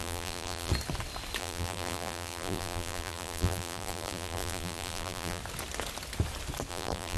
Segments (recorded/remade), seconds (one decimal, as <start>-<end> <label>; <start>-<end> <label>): 0.0-0.7 remade; 0.7-1.4 recorded; 1.4-5.4 remade; 5.4-6.7 recorded; 6.7-7.2 remade